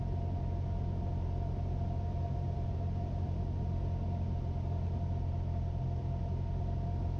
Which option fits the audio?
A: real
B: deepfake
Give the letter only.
A